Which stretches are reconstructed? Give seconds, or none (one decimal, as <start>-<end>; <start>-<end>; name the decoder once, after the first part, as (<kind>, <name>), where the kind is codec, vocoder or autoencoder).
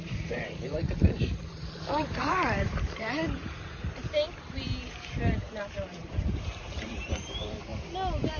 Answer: 0.0-7.7 (vocoder, BigVGAN v2)